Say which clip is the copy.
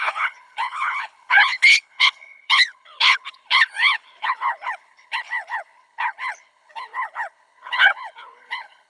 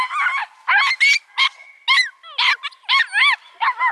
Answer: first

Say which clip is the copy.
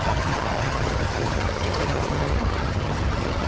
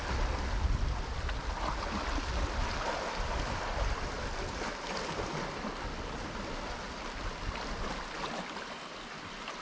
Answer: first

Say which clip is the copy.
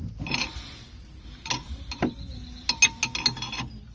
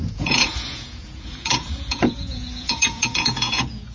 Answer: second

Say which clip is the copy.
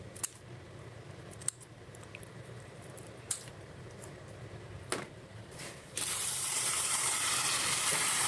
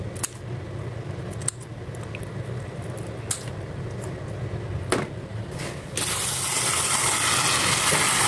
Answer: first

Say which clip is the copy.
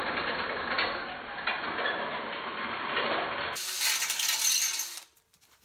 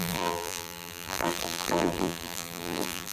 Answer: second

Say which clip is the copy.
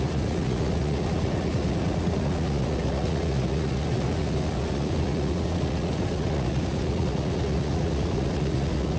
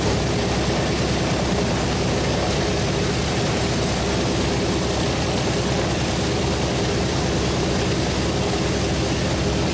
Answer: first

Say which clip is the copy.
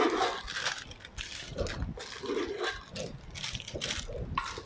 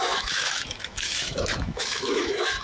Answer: second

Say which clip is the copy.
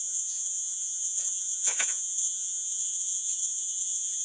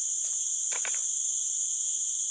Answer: first